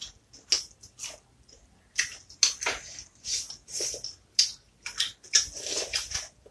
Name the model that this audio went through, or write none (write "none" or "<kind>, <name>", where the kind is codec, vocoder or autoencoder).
none